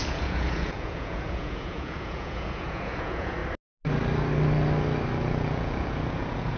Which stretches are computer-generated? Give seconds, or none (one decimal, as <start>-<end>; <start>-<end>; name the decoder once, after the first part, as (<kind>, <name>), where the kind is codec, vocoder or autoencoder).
0.0-3.4 (vocoder, Vocos); 5.2-6.6